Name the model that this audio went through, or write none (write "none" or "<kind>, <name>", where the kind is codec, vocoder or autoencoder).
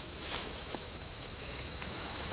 autoencoder, DAC-VAE